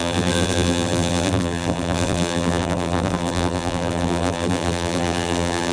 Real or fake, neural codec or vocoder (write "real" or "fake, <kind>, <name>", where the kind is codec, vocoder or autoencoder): fake, vocoder, BigVGAN v2